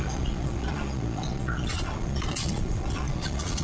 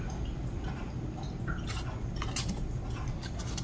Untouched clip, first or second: second